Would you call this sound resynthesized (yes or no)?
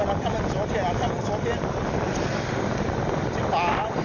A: no